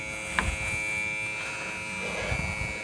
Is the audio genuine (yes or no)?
yes